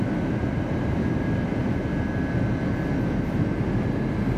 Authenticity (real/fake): real